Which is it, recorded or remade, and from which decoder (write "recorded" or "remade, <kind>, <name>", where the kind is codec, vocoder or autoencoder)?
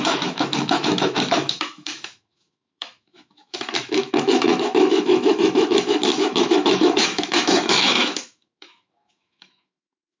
remade, autoencoder, DAC-VAE